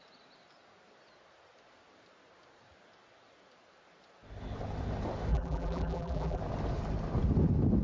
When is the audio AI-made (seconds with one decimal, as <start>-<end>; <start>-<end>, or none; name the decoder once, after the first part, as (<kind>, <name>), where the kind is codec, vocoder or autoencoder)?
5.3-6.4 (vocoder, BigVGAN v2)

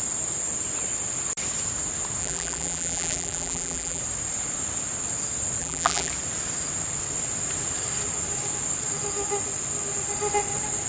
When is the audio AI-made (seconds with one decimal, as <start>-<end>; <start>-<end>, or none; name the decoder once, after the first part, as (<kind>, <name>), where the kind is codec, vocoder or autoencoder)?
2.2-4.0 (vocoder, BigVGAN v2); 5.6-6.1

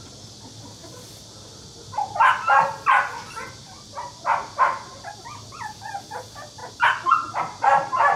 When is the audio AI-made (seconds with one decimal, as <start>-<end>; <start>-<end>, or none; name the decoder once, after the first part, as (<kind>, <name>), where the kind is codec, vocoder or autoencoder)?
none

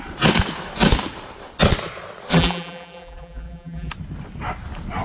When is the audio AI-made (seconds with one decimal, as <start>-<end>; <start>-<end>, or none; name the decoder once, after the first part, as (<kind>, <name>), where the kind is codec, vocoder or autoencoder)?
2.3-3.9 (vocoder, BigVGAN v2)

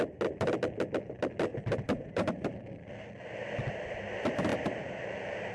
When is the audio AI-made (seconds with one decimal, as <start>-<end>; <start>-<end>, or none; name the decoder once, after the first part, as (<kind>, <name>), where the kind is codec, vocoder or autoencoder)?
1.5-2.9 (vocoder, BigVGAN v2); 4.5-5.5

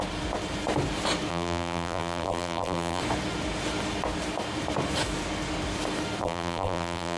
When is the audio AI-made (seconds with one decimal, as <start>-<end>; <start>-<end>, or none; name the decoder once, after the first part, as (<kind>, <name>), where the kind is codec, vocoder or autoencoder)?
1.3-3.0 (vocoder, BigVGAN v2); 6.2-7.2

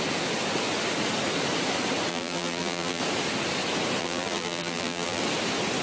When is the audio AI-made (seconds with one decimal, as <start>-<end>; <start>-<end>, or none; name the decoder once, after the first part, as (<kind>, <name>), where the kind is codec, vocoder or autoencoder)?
2.1-3.0 (vocoder, BigVGAN v2); 4.0-5.2